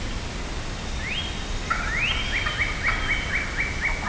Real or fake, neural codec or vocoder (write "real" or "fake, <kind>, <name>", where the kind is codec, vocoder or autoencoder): real